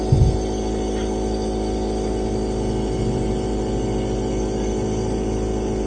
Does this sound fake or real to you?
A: real